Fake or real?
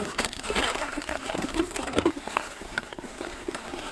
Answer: fake